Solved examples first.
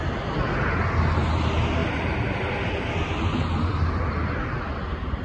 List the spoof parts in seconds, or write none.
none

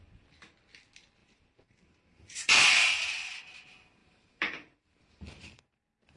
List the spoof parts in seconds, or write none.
1.2-3.4 (vocoder, BigVGAN v2); 4.0-5.6